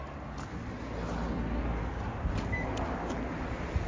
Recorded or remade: recorded